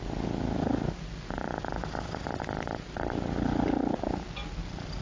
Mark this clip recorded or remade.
recorded